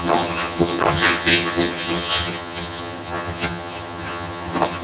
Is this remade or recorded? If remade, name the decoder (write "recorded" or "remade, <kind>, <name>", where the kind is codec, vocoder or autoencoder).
remade, vocoder, HiFi-GAN